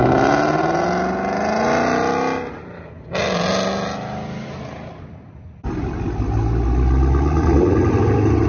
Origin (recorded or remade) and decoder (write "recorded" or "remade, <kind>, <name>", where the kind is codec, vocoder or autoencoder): recorded